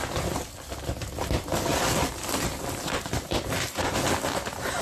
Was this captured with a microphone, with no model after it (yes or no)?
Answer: yes